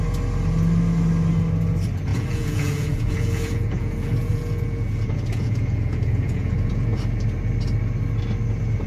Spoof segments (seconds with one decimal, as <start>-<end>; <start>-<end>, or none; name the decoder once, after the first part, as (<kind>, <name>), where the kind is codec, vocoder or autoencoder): 2.1-7.0 (vocoder, Vocos)